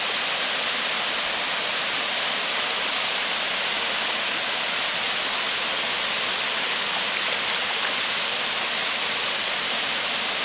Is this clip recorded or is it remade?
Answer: recorded